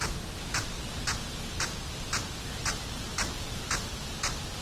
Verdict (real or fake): real